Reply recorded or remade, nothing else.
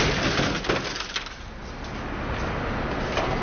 recorded